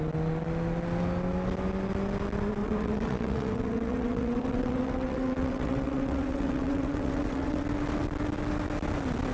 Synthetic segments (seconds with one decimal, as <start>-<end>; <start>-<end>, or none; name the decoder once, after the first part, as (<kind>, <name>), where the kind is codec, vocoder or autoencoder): 2.6-7.6 (vocoder, WaveNeXt)